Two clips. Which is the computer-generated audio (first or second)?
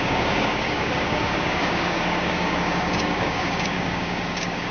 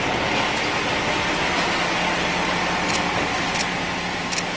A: first